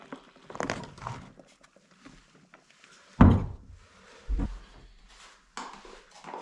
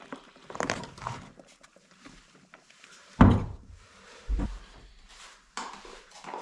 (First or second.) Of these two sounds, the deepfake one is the second